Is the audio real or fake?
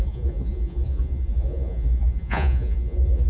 fake